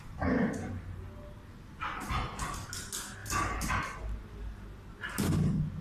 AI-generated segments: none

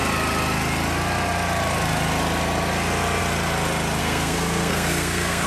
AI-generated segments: 4.0-5.5 (codec, SNAC)

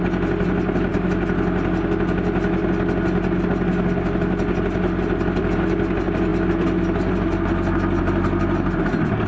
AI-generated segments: none

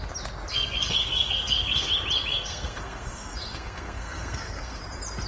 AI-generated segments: 0.5-1.9 (codec, SNAC); 2.3-4.8

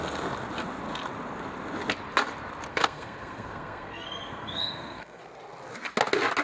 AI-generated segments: 2.7-5.2 (codec, SNAC)

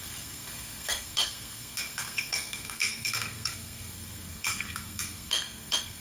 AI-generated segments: 0.0-6.0 (codec, SNAC)